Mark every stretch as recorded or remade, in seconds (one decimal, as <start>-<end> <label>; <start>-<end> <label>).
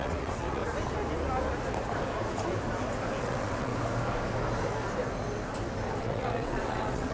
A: 0.0-0.6 remade; 0.6-3.2 recorded; 3.2-3.7 remade; 3.7-6.0 recorded; 6.0-7.1 remade